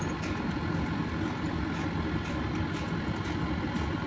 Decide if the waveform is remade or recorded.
recorded